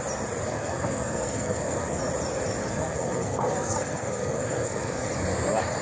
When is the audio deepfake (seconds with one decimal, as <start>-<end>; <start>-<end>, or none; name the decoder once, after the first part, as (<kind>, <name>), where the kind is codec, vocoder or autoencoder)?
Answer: 0.5-2.0 (codec, SNAC); 2.6-5.1